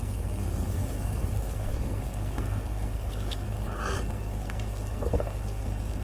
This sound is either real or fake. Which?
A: fake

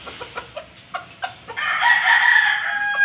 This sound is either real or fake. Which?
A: real